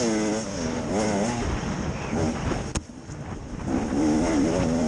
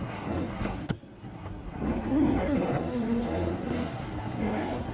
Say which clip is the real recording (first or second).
first